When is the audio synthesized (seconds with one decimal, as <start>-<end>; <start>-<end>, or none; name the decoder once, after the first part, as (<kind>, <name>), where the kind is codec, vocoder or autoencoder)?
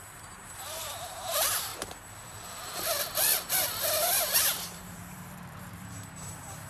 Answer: 0.0-1.7 (vocoder, BigVGAN v2); 3.5-6.7